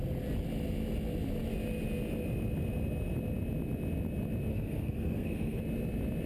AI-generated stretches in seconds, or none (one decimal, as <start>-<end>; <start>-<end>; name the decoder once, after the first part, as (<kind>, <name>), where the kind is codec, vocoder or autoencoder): 4.5-5.6 (codec, SNAC)